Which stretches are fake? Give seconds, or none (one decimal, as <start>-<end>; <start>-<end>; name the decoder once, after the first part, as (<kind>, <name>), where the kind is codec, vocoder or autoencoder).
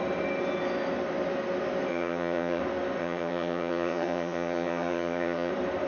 1.9-2.6 (vocoder, HiFi-GAN); 3.0-5.5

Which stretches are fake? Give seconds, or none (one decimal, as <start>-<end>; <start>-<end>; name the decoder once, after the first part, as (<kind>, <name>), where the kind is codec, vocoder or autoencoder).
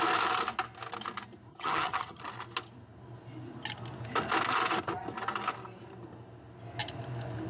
1.5-2.2 (vocoder, HiFi-GAN)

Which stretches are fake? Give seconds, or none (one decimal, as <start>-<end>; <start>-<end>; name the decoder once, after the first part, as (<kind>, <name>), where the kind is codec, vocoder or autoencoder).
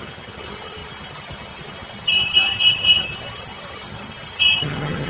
0.0-5.1 (vocoder, HiFi-GAN)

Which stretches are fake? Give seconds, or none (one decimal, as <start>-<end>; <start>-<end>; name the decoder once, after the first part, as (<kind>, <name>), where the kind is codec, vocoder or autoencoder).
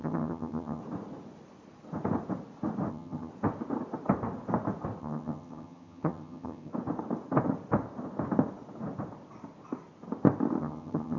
0.0-0.8 (vocoder, HiFi-GAN); 2.9-3.3; 5.0-6.7; 10.6-11.2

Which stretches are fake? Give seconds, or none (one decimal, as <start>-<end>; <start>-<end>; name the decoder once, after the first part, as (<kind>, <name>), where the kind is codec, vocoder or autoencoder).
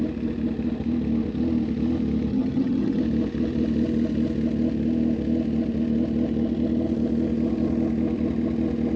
2.3-3.0 (vocoder, HiFi-GAN)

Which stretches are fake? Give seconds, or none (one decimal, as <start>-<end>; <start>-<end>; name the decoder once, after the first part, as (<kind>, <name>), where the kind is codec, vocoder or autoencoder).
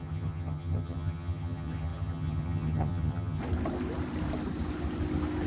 0.0-3.4 (vocoder, HiFi-GAN)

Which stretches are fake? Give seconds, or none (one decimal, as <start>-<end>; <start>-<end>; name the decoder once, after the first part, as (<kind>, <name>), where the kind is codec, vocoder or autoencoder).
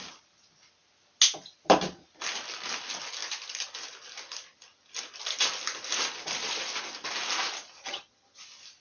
7.8-8.4 (vocoder, HiFi-GAN)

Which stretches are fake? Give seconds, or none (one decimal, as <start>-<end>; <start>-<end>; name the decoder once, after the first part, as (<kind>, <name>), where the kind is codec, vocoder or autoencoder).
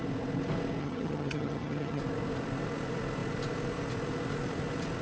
0.8-2.0 (vocoder, HiFi-GAN)